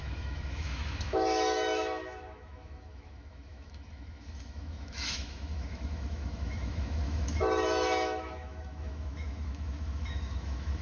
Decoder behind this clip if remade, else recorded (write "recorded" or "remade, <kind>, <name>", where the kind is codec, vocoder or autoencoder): remade, autoencoder, DAC-VAE